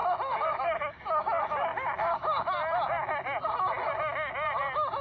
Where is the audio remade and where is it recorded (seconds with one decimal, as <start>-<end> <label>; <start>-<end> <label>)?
0.0-5.0 recorded